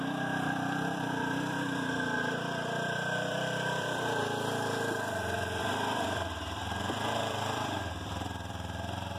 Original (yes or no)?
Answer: no